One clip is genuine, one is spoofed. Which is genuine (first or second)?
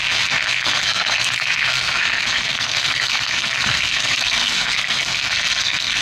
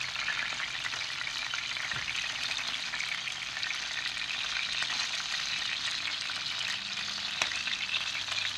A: second